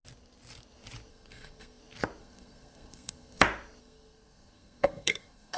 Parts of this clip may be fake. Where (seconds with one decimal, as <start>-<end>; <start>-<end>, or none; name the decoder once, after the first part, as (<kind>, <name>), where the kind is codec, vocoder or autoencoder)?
1.1-1.8 (codec, SNAC); 2.2-3.4; 3.8-5.6